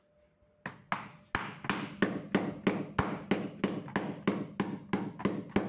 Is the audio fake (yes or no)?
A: no